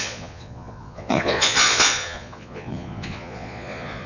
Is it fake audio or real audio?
fake